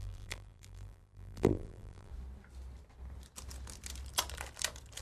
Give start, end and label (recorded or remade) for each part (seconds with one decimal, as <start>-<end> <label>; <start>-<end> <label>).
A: 0.0-2.1 remade; 2.1-5.0 recorded